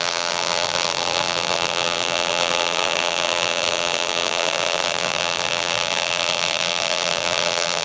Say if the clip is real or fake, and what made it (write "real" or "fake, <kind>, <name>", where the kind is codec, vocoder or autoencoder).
fake, vocoder, BigVGAN v2